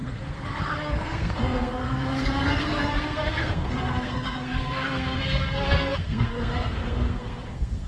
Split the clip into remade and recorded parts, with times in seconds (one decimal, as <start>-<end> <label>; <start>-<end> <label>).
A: 0.0-7.9 remade